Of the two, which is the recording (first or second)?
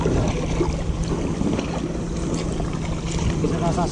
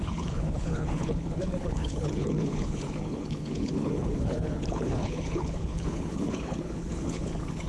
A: first